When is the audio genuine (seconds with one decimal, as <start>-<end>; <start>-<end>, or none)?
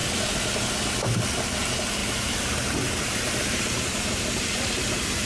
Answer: 0.0-2.0